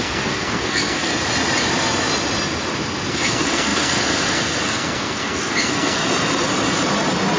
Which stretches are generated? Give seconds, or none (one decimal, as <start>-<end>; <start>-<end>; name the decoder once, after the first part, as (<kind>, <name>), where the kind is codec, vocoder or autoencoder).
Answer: 0.0-1.1 (codec, SNAC); 3.1-6.0